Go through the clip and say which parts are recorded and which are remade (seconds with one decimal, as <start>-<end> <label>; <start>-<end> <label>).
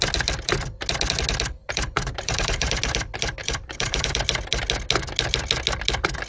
0.0-1.6 recorded; 1.6-2.7 remade; 2.7-3.4 recorded; 3.4-4.2 remade; 4.2-6.3 recorded